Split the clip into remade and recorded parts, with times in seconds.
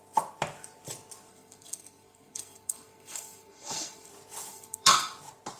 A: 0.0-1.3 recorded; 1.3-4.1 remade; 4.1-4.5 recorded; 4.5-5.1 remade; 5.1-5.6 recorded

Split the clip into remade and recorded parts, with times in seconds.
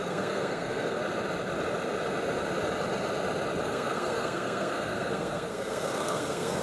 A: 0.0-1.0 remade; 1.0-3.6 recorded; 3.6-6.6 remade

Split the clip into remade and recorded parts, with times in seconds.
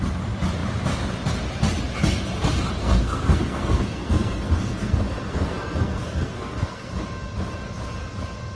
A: 0.0-2.8 recorded; 2.8-6.9 remade; 6.9-8.5 recorded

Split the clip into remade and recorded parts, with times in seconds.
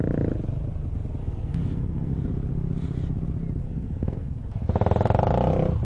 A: 0.0-1.2 recorded; 1.2-2.1 remade; 2.1-3.6 recorded; 3.6-4.4 remade; 4.4-5.8 recorded